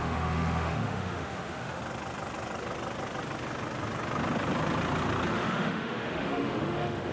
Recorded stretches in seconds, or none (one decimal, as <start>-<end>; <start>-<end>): 1.8-5.3